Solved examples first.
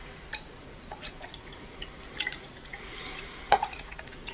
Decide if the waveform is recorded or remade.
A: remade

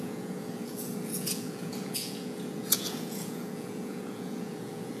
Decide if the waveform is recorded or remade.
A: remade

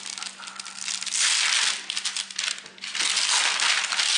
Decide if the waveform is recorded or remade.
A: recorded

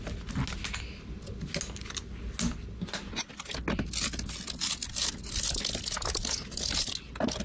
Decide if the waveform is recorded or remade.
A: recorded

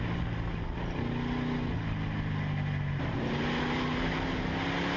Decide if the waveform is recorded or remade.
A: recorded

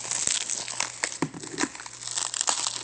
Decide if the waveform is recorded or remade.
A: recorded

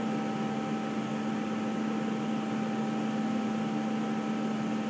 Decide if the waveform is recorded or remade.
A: recorded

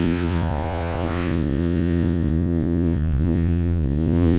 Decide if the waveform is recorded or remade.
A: remade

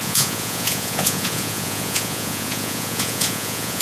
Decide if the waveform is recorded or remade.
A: remade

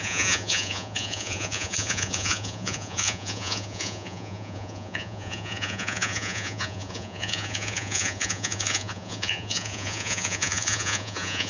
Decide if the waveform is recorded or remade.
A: remade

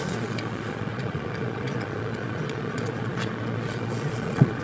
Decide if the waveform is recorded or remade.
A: remade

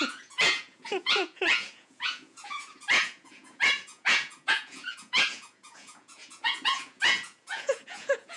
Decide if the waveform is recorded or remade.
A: remade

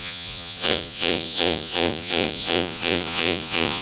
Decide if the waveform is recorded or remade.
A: remade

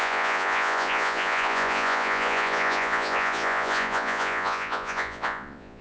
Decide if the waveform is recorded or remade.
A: remade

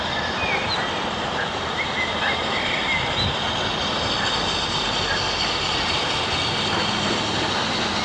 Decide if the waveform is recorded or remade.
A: recorded